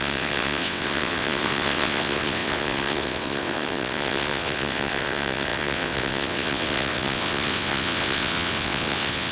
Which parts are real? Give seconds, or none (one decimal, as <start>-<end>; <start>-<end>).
none